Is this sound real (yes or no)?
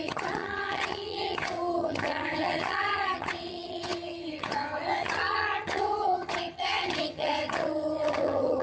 no